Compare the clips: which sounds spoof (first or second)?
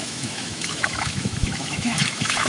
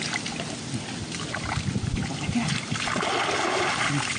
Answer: first